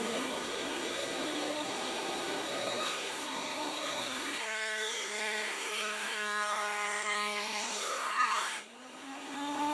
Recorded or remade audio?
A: remade